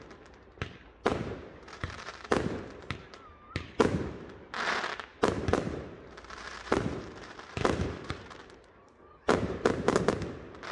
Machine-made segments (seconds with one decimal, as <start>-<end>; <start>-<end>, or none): 1.1-2.1; 5.5-10.0